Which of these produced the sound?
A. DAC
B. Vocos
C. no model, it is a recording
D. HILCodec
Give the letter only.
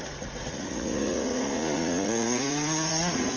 B